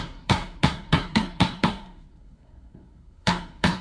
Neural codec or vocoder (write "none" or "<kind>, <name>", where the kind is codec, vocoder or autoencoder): codec, SNAC